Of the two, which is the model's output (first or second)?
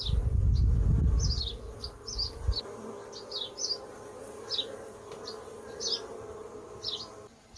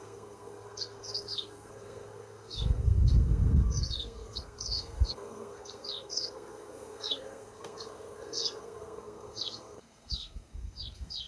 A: second